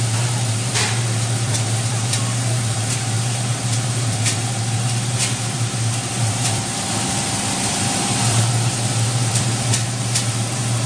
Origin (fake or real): fake